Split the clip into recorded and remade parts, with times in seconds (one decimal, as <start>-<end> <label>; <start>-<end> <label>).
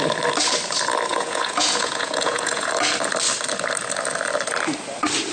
0.0-1.1 recorded; 1.1-2.7 remade; 2.7-5.3 recorded